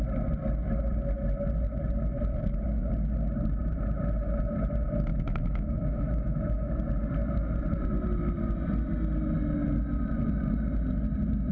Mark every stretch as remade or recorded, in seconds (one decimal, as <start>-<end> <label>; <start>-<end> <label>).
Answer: 0.0-5.1 recorded; 5.1-6.7 remade; 6.7-11.5 recorded